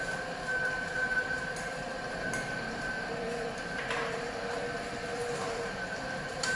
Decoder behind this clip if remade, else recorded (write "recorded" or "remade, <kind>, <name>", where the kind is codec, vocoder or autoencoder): remade, vocoder, BigVGAN v2